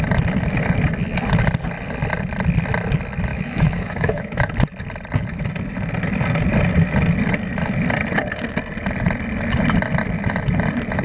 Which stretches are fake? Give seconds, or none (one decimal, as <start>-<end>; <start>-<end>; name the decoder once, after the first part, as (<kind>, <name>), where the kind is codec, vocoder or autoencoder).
3.3-4.5 (autoencoder, DAC-VAE)